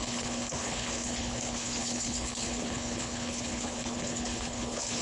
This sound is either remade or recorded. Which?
remade